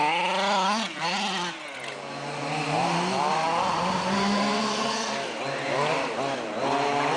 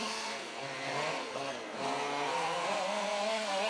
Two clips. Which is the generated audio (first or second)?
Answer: second